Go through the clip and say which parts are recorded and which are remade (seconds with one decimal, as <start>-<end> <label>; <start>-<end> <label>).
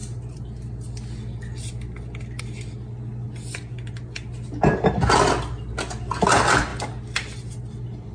0.0-8.1 recorded